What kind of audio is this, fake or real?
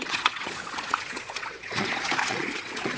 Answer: fake